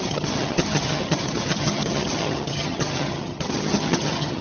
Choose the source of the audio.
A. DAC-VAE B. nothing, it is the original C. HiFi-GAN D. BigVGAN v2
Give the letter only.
C